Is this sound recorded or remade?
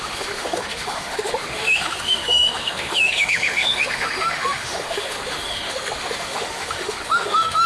remade